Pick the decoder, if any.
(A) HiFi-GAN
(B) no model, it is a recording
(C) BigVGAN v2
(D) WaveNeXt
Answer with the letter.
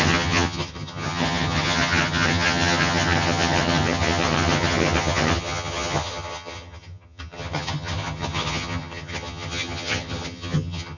A